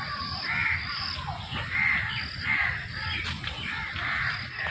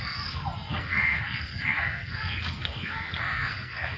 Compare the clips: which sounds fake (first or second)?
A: second